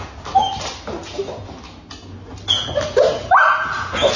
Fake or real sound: real